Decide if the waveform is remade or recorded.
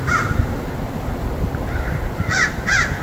recorded